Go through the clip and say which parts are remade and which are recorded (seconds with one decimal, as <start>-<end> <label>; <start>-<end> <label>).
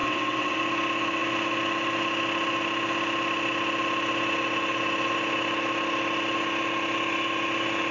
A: 0.0-0.6 remade; 0.6-7.9 recorded